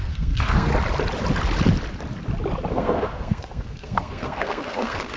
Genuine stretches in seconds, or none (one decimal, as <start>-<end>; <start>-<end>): 0.7-2.7